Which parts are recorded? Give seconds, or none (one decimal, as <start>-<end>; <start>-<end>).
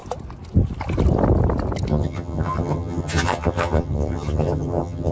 0.0-1.9